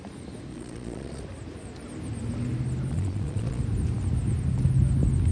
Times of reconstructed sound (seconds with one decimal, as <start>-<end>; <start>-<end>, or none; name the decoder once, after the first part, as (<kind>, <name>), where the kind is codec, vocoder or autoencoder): 0.5-1.2 (vocoder, Vocos); 2.9-3.6